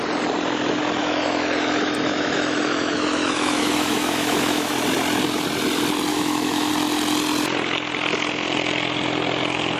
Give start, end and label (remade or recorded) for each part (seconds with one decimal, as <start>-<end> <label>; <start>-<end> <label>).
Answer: 0.0-1.0 recorded; 1.0-4.7 remade; 4.7-6.1 recorded; 6.1-6.7 remade; 6.7-9.8 recorded

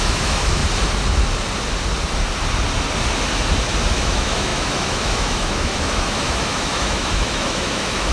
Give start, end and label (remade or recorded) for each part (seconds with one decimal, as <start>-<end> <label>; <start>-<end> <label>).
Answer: 0.0-0.6 remade; 0.6-3.9 recorded; 3.9-8.1 remade

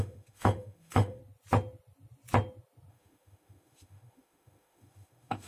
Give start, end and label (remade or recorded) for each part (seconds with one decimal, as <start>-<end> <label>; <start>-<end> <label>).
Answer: 0.0-1.2 remade; 1.2-2.9 recorded; 2.9-5.5 remade